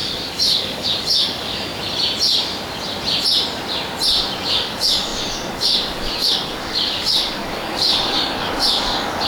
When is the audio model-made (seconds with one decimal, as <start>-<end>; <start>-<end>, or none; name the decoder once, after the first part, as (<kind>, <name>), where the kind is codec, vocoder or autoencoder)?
0.0-1.7 (codec, DAC); 4.5-9.3